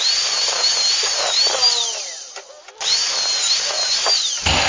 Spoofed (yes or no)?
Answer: no